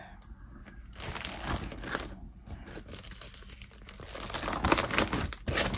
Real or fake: real